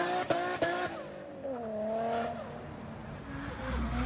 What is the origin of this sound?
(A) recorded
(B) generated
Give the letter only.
A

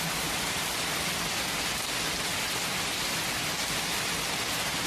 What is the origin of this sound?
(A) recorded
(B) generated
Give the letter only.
A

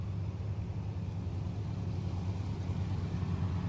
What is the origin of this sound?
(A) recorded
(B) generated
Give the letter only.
A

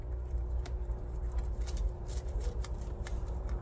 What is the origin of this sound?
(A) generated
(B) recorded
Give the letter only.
A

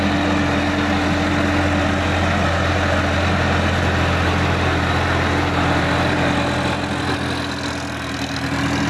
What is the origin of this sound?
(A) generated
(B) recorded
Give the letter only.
B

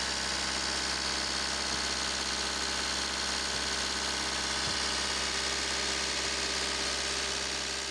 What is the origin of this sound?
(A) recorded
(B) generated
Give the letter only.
A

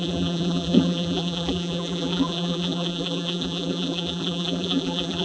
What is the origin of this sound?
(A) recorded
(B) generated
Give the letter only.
B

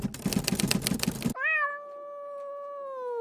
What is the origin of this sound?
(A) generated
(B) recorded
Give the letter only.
B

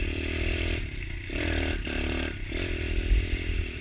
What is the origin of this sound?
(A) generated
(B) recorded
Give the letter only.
A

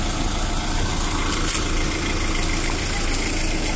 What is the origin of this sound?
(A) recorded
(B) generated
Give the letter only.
A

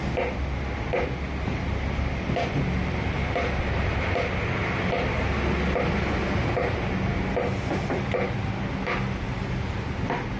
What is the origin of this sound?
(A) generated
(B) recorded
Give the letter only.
B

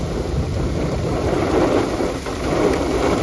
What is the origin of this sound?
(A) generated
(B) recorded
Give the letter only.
A